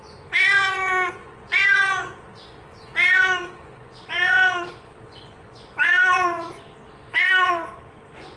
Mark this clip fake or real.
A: fake